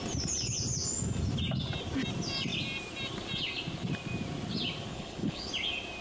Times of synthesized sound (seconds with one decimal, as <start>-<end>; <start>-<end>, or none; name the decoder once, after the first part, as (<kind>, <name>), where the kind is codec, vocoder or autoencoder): 4.9-5.5 (codec, HILCodec)